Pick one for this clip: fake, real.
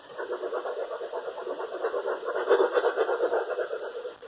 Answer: real